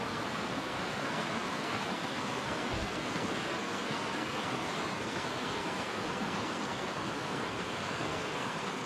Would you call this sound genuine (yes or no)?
no